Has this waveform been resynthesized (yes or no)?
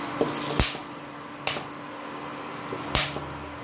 no